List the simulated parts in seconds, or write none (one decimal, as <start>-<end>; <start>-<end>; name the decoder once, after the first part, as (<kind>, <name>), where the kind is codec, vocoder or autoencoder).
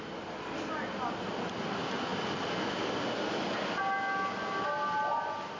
none